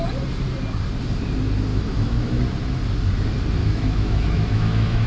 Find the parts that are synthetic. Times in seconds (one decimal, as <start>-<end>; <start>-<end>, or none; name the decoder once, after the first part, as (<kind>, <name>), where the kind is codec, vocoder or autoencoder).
1.7-2.4 (autoencoder, DAC-VAE); 3.6-5.1